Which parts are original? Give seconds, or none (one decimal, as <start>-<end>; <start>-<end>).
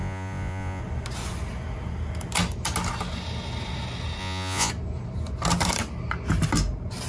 0.8-4.2; 4.7-7.1